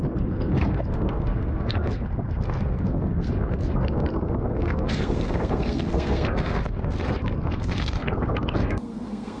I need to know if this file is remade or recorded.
remade